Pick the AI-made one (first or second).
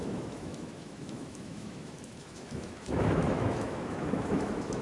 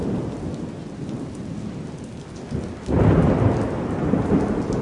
first